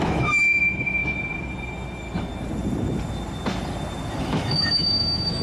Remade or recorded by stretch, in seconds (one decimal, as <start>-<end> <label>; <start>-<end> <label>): 0.0-1.0 remade; 1.0-4.2 recorded; 4.2-5.4 remade

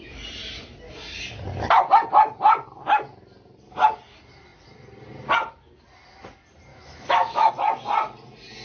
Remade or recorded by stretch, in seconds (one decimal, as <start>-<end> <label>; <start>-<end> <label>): 0.0-6.7 recorded; 6.7-7.5 remade; 7.5-8.6 recorded

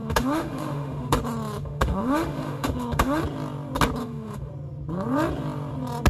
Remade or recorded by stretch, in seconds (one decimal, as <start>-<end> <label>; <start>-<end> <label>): 0.0-1.2 remade; 1.2-1.6 recorded; 1.6-3.2 remade; 3.2-4.0 recorded; 4.0-4.5 remade; 4.5-6.1 recorded

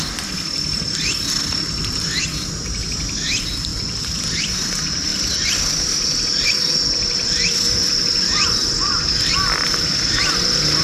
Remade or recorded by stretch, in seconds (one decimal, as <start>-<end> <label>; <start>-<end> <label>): 0.0-10.8 recorded

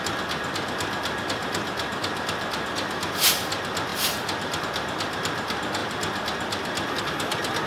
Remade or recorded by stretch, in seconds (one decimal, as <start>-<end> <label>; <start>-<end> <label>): 0.0-7.7 recorded

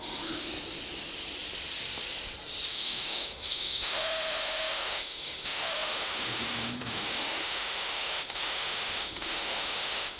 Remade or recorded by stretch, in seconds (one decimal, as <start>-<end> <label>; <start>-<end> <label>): 0.0-0.5 remade; 0.5-2.7 recorded; 2.7-10.2 remade